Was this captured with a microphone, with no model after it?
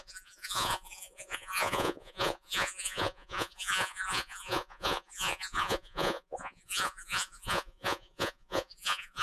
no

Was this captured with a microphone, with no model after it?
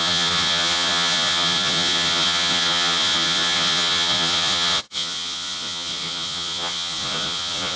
no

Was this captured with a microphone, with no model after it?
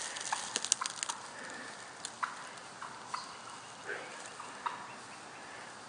yes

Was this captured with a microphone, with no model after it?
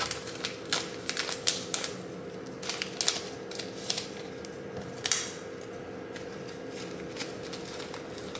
yes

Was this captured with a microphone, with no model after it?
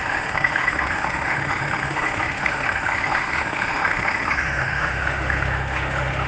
no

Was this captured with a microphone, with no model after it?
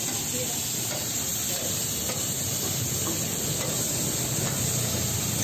yes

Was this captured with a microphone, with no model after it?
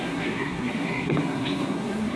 no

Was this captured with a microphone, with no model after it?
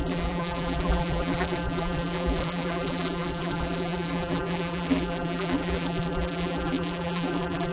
no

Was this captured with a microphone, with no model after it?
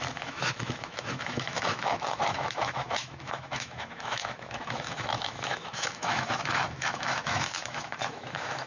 no